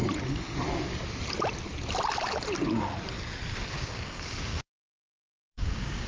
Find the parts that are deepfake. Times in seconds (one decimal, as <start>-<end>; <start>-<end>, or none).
3.7-6.1